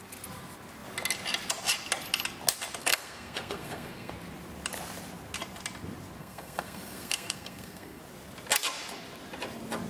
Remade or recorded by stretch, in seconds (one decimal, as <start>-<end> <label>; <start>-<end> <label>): 0.0-2.8 recorded; 2.8-4.1 remade; 4.1-6.2 recorded; 6.2-8.0 remade; 8.0-9.9 recorded